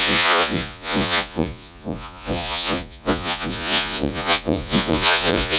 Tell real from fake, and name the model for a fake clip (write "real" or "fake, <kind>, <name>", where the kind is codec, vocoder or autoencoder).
fake, vocoder, Vocos